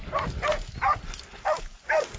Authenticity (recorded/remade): recorded